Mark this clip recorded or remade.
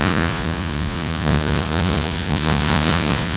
remade